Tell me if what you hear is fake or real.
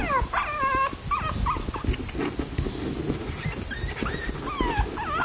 real